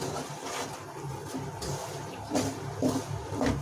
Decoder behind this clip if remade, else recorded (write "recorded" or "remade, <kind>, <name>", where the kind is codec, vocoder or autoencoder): recorded